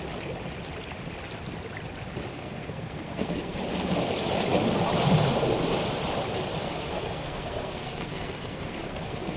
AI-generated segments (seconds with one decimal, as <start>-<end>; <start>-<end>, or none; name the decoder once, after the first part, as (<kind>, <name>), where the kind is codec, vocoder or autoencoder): 2.3-3.6 (codec, SNAC); 6.6-9.4